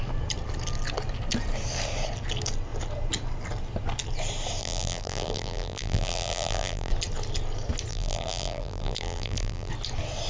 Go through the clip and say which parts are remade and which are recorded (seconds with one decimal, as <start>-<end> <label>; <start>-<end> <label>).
0.0-4.6 recorded; 4.6-6.9 remade; 6.9-7.9 recorded; 7.9-9.7 remade; 9.7-10.3 recorded